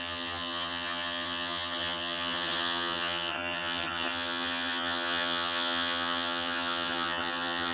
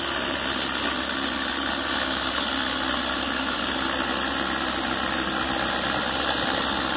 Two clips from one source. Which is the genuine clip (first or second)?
second